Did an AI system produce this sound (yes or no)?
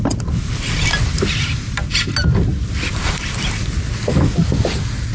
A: no